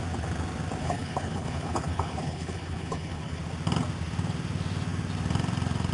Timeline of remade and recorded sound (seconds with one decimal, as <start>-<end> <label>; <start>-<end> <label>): 0.0-0.8 recorded; 0.8-3.4 remade; 3.4-5.9 recorded